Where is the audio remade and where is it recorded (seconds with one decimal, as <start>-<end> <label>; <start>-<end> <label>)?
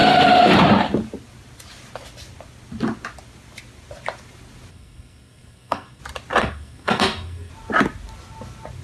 0.0-4.7 recorded; 4.7-6.0 remade; 6.0-6.4 recorded; 6.4-7.5 remade; 7.5-8.8 recorded